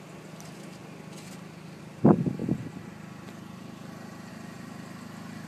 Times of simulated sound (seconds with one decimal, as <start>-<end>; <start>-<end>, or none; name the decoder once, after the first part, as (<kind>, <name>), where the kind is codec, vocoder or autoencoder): none